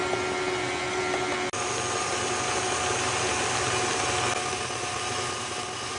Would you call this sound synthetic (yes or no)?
no